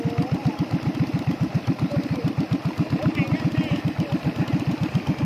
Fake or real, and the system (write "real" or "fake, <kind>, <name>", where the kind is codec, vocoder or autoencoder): real